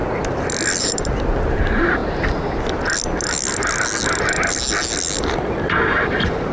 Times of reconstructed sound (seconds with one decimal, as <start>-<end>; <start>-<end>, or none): 0.8-2.0; 5.9-6.5